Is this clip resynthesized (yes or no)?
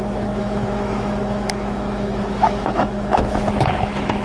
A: yes